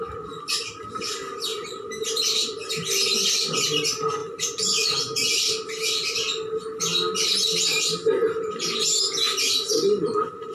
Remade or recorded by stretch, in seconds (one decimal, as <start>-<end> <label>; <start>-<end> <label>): 0.0-1.5 recorded; 1.5-2.7 remade; 2.7-4.2 recorded; 4.2-5.5 remade; 5.5-10.5 recorded